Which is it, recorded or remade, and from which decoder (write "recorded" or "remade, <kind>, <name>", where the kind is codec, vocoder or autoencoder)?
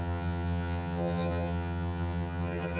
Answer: remade, vocoder, HiFi-GAN